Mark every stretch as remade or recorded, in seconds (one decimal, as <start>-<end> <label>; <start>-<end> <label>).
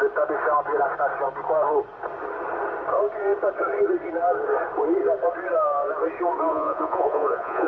0.0-6.5 recorded; 6.5-7.7 remade